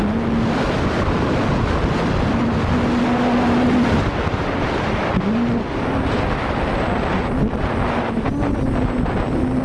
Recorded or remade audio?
recorded